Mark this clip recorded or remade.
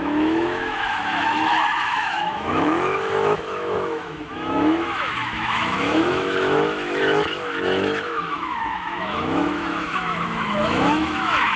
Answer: remade